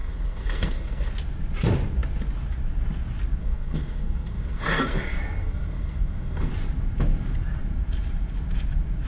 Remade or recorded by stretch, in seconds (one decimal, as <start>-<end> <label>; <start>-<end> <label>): 0.0-1.1 remade; 1.1-3.4 recorded; 3.4-6.5 remade; 6.5-9.1 recorded